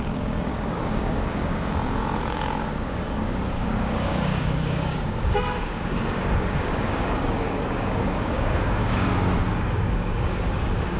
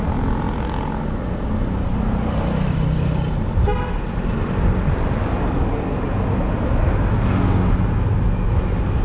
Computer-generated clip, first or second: first